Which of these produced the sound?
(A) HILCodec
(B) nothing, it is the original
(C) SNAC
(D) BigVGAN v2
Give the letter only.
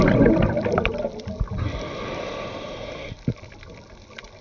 D